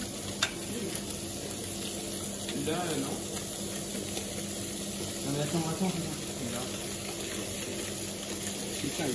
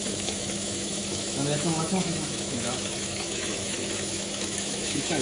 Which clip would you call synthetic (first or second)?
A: second